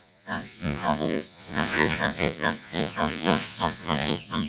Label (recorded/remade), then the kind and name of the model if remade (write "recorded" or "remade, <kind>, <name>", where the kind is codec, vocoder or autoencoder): remade, vocoder, Vocos